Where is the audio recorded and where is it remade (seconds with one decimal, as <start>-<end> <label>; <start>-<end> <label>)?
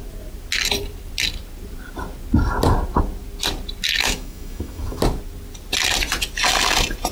0.0-4.0 recorded; 4.0-5.0 remade; 5.0-7.1 recorded